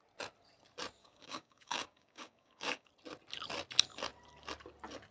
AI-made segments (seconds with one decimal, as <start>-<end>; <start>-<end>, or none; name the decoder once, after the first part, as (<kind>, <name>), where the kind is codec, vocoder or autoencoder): 1.0-2.9 (codec, DAC)